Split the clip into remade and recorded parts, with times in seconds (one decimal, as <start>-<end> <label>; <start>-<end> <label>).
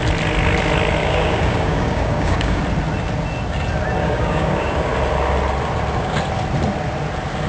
0.0-1.0 recorded; 1.0-2.6 remade; 2.6-4.0 recorded; 4.0-4.9 remade; 4.9-7.5 recorded